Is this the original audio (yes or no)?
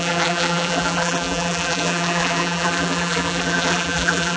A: no